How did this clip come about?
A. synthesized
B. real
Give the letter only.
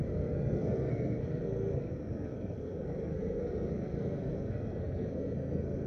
A